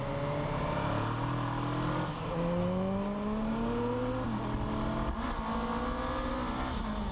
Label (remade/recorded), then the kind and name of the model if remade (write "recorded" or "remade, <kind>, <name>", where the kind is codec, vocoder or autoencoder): recorded